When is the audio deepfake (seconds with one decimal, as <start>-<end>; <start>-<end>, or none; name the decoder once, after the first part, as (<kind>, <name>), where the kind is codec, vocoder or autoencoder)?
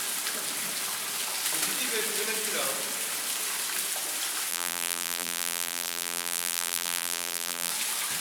4.5-7.7 (vocoder, BigVGAN v2)